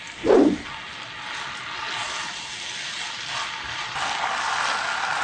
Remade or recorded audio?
recorded